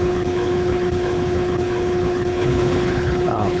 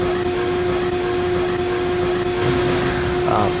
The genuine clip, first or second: second